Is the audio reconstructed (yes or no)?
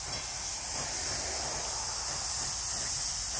no